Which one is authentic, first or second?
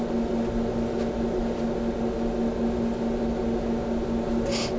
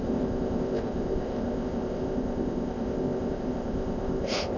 first